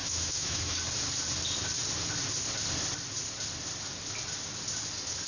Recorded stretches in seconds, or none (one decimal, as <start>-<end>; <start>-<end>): 0.8-5.3